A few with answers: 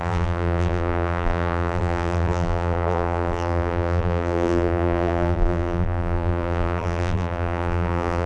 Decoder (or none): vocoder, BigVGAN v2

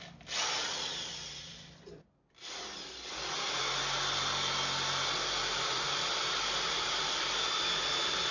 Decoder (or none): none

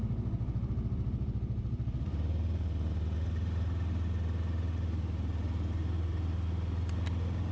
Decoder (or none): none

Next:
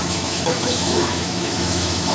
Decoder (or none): autoencoder, DAC-VAE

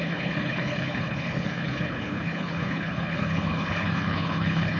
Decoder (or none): codec, HILCodec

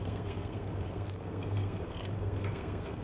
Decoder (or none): codec, SNAC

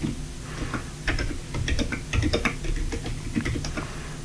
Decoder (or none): none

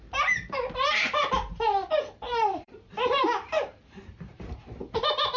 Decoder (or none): vocoder, BigVGAN v2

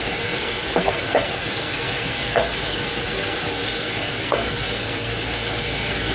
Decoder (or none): codec, SNAC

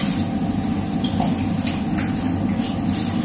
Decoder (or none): none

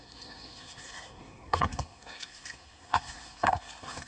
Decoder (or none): codec, SNAC